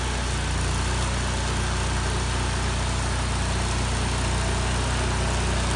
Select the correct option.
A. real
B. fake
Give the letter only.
A